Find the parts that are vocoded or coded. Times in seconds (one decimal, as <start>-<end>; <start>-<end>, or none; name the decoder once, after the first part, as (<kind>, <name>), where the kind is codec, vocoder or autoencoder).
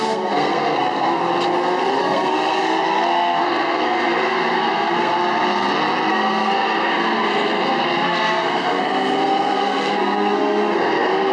0.0-1.2 (codec, SNAC); 2.0-5.1; 6.1-11.3